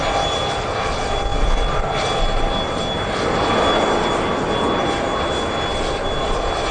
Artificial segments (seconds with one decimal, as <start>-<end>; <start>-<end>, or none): none